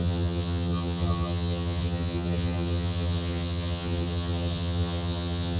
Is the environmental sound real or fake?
fake